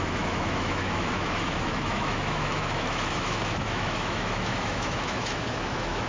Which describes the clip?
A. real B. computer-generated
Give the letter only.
B